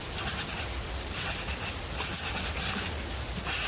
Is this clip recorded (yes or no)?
yes